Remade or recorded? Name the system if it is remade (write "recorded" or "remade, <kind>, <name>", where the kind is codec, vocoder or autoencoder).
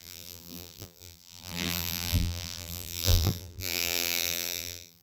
remade, vocoder, BigVGAN v2